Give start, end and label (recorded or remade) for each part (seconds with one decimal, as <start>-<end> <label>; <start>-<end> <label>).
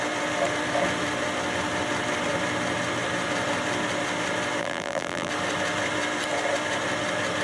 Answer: 0.0-4.6 recorded; 4.6-5.3 remade; 5.3-7.4 recorded